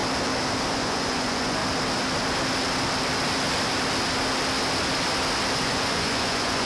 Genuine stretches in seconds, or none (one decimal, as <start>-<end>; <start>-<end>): 0.0-0.7; 1.6-5.6